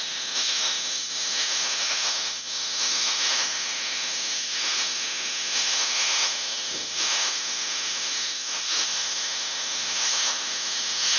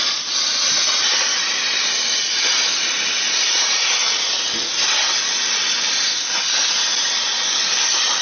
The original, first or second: second